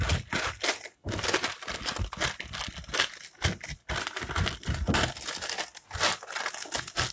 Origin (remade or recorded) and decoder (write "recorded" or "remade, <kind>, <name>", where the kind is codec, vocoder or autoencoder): recorded